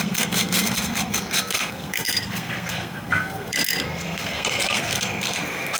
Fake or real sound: fake